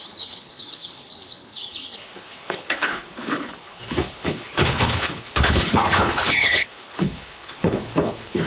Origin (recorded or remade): remade